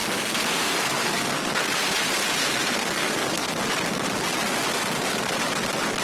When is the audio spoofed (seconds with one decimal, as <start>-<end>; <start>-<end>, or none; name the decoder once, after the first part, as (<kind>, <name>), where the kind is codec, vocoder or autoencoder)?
0.0-1.7 (codec, SNAC); 2.4-3.5